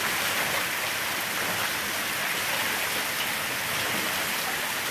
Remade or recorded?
recorded